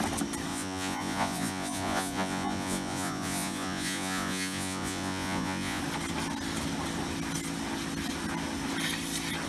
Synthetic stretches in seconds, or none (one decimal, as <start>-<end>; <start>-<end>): 0.5-5.8